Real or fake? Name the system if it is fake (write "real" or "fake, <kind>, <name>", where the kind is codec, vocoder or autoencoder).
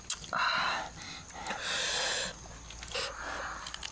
real